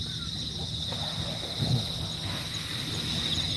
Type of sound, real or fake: real